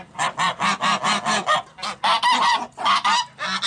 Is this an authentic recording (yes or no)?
yes